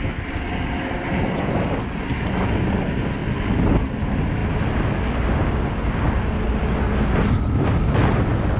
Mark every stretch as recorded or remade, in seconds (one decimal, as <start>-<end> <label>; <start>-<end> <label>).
0.0-8.6 recorded